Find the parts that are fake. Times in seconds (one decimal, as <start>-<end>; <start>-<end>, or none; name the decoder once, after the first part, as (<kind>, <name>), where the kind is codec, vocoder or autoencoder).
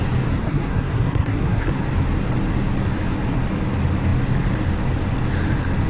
0.4-1.7 (codec, SNAC)